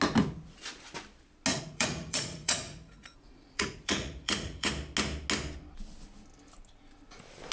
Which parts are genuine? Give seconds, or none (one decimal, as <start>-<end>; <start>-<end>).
0.0-1.5; 4.7-7.5